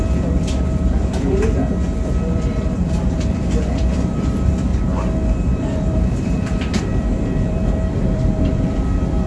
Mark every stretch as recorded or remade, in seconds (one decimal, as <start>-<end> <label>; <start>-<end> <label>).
0.0-4.7 remade; 4.7-5.3 recorded; 5.3-9.3 remade